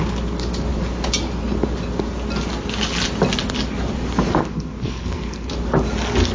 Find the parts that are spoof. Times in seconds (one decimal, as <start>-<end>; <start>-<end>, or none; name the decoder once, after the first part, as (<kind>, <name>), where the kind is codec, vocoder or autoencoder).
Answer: 4.4-5.5 (codec, SNAC)